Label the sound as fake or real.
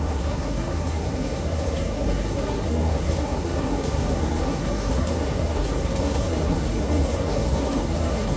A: fake